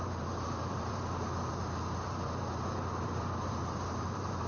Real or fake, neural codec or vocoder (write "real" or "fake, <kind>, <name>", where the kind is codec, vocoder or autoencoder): fake, vocoder, BigVGAN v2